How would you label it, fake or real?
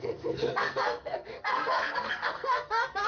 fake